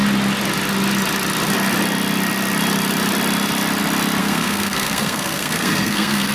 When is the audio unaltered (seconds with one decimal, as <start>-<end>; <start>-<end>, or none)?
0.0-4.2